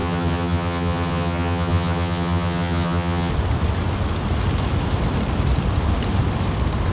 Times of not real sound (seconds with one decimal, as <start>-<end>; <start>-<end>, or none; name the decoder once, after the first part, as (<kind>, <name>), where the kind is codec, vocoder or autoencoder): 0.0-3.3 (vocoder, HiFi-GAN)